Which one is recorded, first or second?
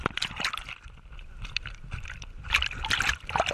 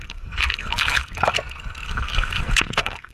first